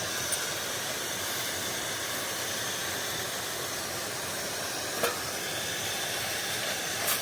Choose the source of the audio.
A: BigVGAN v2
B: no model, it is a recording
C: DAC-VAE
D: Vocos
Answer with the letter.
B